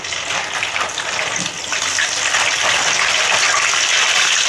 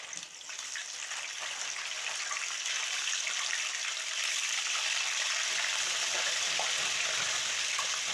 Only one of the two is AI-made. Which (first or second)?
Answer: second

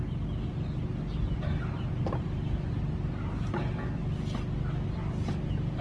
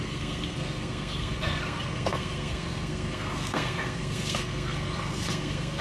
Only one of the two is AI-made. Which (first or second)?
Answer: second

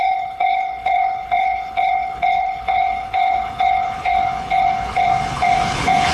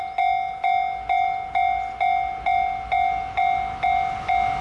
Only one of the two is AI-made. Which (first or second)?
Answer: first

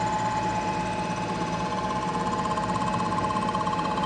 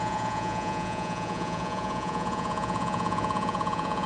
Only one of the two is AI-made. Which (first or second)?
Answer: second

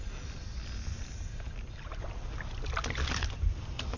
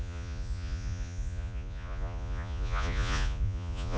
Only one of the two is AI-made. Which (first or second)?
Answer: second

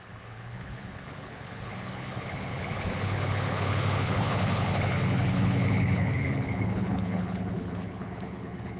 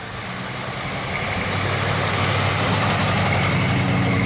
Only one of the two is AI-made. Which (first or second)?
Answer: first